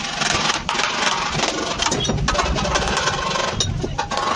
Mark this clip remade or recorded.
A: recorded